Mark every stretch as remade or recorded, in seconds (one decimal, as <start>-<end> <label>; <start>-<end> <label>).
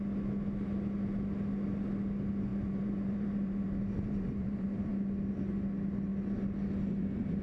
0.0-2.5 recorded; 2.5-4.9 remade; 4.9-7.4 recorded